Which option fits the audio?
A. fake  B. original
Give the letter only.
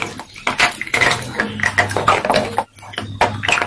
B